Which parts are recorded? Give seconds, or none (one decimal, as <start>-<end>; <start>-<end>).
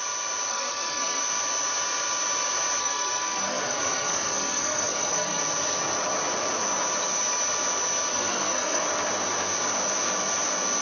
0.0-0.5; 1.2-2.8; 5.4-8.1; 8.8-10.8